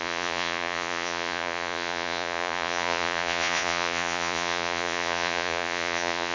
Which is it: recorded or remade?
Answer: remade